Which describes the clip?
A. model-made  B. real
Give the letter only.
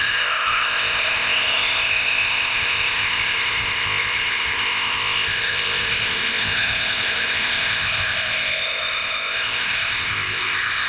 A